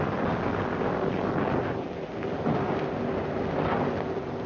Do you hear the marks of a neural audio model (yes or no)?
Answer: no